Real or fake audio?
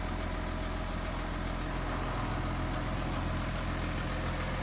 real